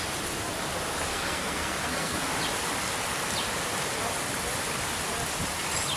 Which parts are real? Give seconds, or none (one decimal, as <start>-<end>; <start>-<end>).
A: 0.0-1.1; 2.2-6.0